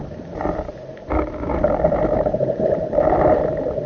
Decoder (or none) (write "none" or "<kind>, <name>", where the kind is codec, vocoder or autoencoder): none